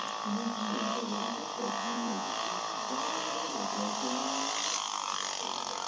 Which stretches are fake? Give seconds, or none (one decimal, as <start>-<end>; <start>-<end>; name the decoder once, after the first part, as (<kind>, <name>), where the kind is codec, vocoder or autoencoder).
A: 1.8-2.3 (vocoder, Vocos)